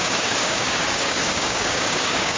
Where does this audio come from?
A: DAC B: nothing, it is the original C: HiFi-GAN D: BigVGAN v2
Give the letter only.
A